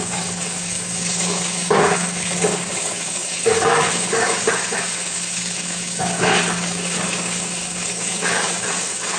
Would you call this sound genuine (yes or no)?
no